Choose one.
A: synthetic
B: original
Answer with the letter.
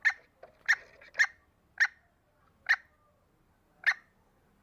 B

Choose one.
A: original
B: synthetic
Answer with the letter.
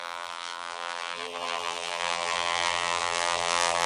B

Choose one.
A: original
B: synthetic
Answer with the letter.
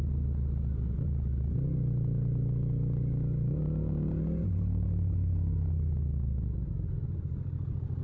A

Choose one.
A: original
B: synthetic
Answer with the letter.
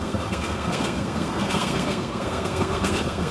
B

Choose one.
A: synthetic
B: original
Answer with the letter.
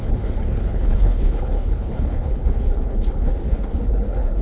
A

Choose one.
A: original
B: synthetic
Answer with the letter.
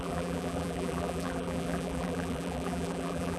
B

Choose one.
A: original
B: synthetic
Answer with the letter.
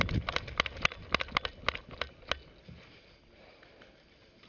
A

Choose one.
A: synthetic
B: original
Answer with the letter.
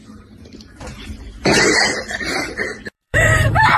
A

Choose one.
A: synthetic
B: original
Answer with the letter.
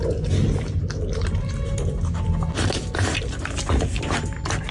B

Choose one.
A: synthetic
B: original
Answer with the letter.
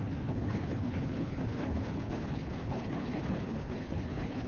A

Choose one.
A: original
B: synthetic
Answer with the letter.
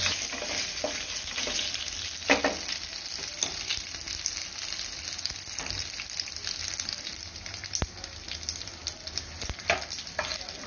A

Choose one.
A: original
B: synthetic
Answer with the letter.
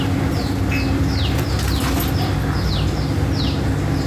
A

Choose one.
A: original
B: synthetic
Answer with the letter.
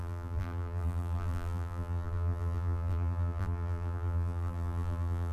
B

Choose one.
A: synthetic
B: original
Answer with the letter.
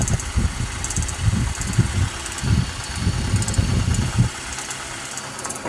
B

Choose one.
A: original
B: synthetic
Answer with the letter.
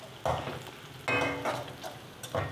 A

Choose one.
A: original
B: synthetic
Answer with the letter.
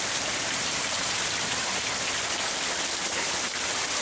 A